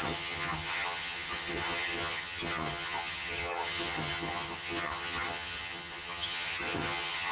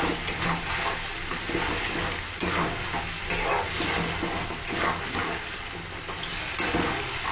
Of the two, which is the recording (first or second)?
second